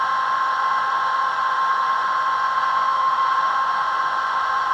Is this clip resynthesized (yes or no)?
yes